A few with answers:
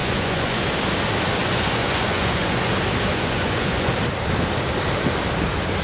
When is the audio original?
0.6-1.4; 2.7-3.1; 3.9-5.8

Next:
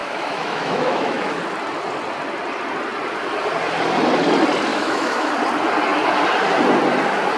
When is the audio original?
1.4-4.7; 5.3-7.4

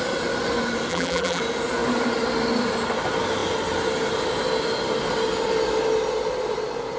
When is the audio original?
0.0-0.9; 1.4-7.0

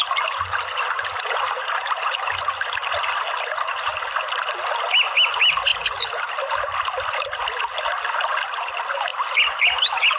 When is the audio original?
0.0-10.2

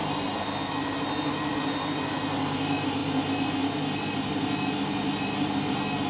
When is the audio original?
0.0-6.1

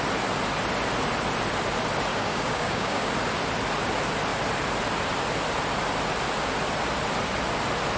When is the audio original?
0.0-2.1; 3.1-8.0

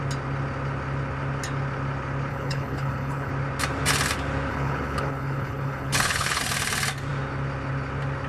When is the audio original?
0.0-2.3; 3.3-4.5; 6.4-8.3

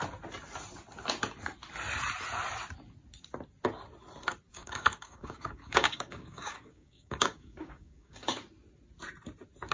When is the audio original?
0.0-4.5; 8.4-9.7